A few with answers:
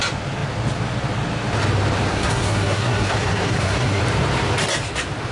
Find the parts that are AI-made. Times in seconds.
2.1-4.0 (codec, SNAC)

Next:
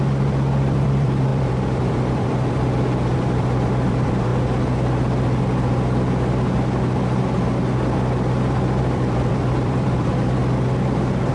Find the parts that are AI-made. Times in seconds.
0.0-4.3 (vocoder, BigVGAN v2); 8.8-10.4

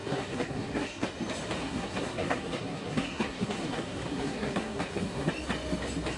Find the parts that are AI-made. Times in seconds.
0.0-1.1 (codec, SNAC); 1.6-5.3

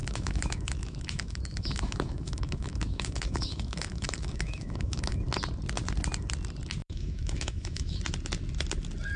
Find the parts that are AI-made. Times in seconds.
0.0-5.2 (autoencoder, DAC-VAE); 6.8-8.0

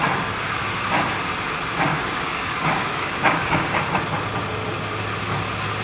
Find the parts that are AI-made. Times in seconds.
1.9-3.9 (codec, DAC)

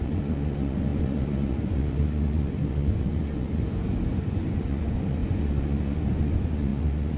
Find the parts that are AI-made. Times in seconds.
0.0-3.6 (vocoder, Vocos); 4.2-7.2

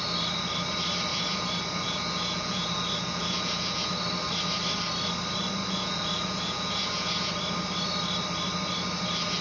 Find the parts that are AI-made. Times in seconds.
1.1-3.9 (vocoder, Vocos); 5.6-7.3

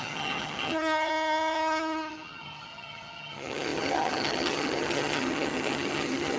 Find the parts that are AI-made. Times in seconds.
0.0-6.4 (vocoder, HiFi-GAN)